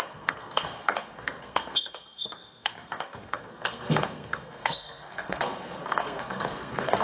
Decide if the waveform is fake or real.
fake